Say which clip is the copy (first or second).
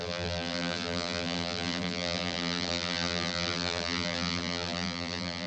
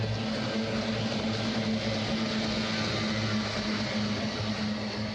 first